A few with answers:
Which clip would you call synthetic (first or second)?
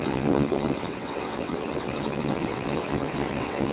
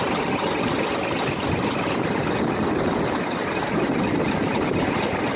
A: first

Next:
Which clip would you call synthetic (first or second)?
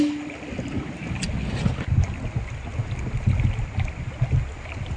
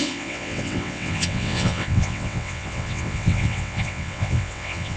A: second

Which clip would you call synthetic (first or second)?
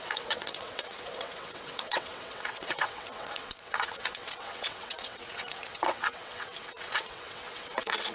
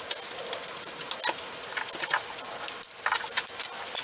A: first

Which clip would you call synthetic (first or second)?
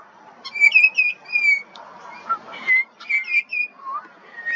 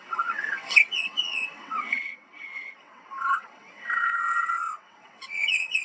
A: second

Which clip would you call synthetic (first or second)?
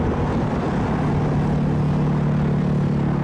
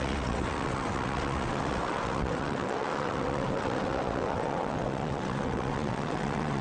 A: second